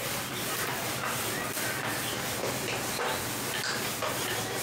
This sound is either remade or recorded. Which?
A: recorded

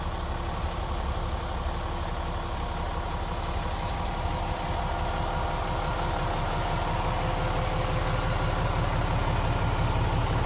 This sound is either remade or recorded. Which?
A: recorded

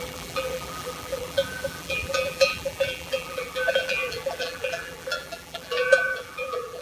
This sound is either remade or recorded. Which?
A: remade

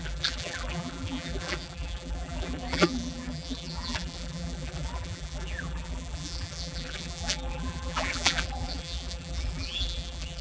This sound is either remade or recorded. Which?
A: remade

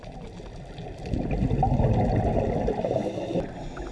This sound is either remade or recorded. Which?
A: recorded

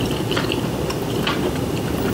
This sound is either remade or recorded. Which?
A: recorded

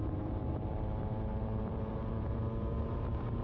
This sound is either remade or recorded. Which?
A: remade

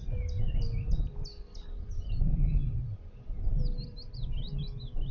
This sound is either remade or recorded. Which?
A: recorded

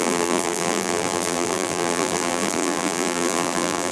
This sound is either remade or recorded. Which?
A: remade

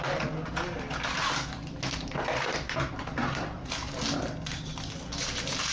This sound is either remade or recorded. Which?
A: recorded